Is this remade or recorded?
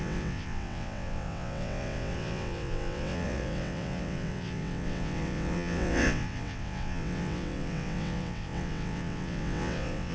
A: remade